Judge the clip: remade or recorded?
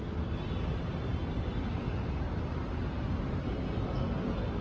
recorded